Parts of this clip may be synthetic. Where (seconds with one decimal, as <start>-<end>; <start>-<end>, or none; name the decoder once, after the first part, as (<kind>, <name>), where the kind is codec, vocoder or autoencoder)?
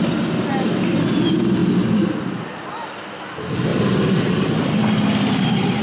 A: 3.7-4.3 (vocoder, BigVGAN v2)